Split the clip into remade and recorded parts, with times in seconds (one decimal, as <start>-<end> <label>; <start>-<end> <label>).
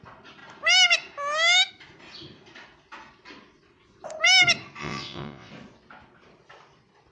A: 0.0-4.8 recorded; 4.8-5.5 remade; 5.5-7.1 recorded